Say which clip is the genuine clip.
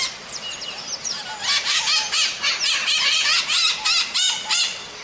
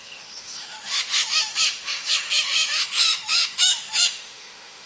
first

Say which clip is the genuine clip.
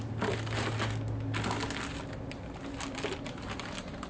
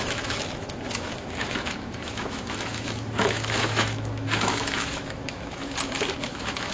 first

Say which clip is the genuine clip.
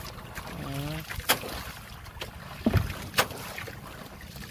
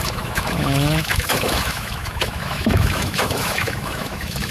first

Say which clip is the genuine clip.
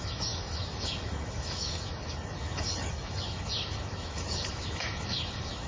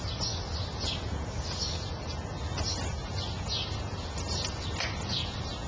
second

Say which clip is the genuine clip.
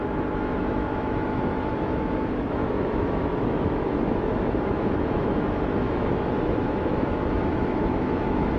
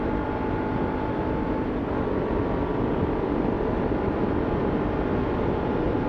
second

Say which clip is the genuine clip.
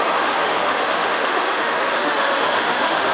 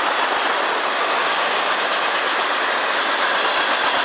second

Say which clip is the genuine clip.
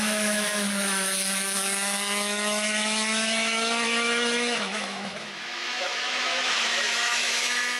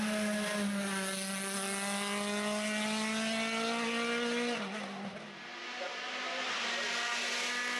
second